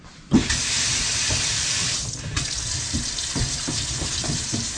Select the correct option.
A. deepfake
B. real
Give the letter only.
A